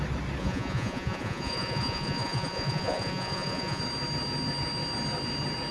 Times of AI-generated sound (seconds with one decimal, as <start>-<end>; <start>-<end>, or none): 0.4-3.8